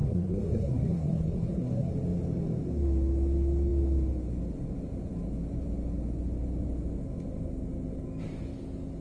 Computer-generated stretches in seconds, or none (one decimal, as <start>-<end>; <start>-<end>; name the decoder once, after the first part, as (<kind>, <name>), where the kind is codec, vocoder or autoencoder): 0.0-1.9 (codec, SNAC)